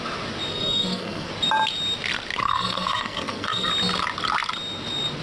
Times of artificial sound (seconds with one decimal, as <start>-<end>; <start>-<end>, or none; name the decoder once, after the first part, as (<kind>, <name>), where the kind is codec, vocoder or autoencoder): 0.5-1.3 (codec, SNAC); 2.4-3.7